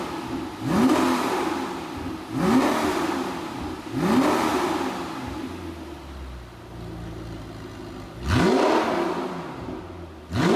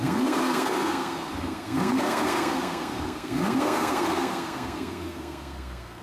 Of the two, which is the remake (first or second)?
second